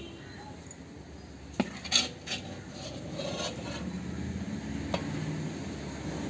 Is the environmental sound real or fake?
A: real